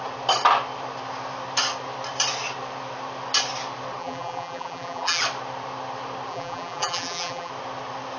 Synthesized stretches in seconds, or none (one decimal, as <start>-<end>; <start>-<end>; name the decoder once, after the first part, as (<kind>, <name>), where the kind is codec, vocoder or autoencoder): 4.0-5.2 (vocoder, BigVGAN v2); 6.3-7.5